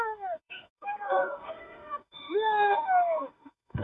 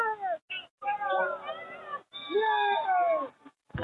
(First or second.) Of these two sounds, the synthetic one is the first